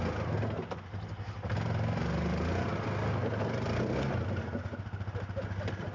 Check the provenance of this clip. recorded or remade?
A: recorded